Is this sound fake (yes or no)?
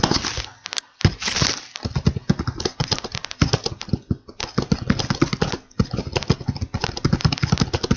no